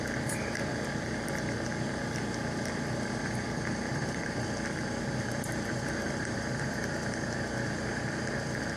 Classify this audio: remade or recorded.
remade